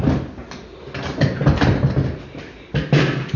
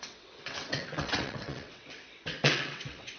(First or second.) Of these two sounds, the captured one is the first